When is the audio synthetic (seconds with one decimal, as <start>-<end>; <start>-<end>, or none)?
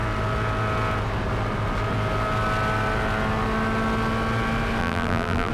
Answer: 4.8-5.5